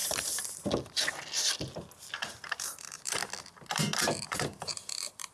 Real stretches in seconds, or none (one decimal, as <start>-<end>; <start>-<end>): 0.0-2.1; 3.2-4.0